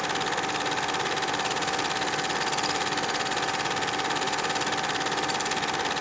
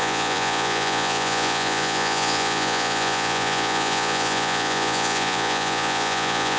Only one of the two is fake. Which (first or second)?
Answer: second